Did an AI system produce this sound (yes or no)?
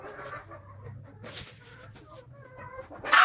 no